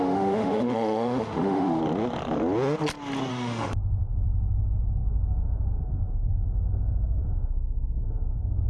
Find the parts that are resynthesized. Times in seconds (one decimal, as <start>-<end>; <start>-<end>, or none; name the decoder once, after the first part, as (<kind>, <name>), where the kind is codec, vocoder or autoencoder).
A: 0.0-1.8 (autoencoder, DAC-VAE); 3.3-8.7